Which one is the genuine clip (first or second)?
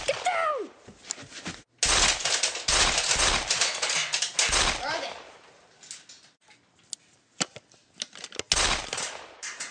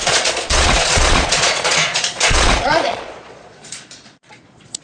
first